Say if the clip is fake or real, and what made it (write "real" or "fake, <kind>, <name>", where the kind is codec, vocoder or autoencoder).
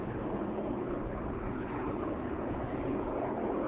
fake, codec, HILCodec